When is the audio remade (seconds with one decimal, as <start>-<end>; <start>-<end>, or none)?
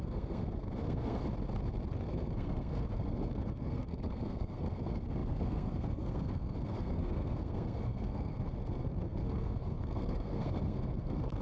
0.0-1.2; 2.1-11.4